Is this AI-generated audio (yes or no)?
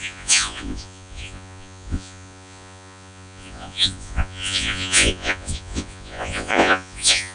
yes